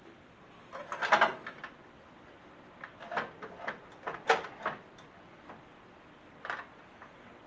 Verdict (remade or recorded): recorded